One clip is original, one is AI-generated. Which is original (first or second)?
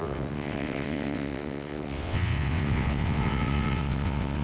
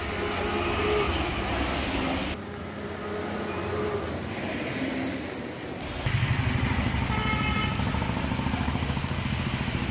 second